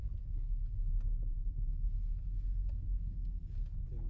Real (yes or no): yes